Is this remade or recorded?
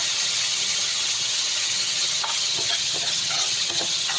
remade